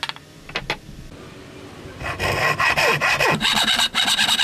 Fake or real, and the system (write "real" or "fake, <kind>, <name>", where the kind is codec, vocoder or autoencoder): real